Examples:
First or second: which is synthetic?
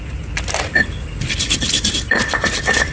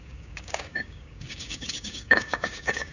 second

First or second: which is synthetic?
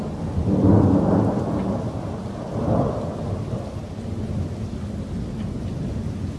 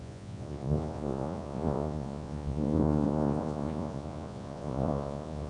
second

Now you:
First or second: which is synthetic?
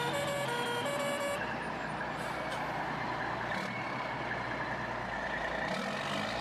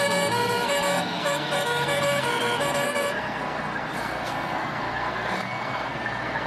second